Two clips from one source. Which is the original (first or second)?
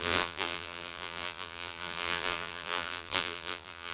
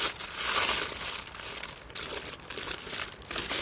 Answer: second